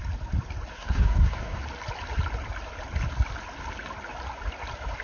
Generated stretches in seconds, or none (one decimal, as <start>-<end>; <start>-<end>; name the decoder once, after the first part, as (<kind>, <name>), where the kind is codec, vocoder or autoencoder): 0.7-1.6 (codec, SNAC)